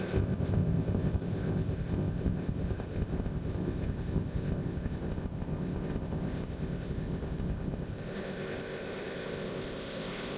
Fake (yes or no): yes